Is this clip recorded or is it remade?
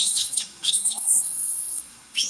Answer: remade